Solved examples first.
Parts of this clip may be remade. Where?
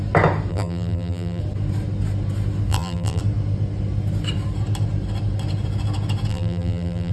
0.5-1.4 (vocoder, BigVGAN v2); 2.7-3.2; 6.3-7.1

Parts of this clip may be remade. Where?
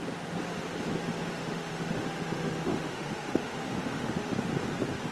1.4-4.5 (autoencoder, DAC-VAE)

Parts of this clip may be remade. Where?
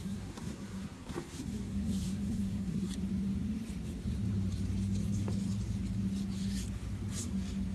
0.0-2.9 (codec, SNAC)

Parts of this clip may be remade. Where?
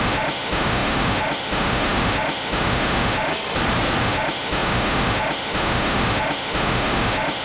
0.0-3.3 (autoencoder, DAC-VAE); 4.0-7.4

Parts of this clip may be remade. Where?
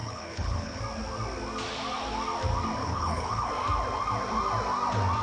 0.0-0.8 (codec, HILCodec); 2.8-3.5